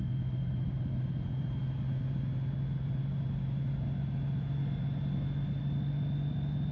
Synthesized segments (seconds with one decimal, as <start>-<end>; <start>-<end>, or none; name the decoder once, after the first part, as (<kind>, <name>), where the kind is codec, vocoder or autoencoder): none